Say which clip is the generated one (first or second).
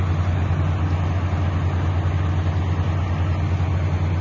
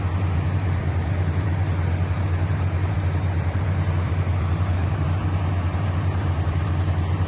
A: second